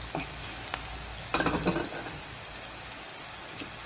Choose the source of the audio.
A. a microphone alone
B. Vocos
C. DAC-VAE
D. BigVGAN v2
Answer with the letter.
A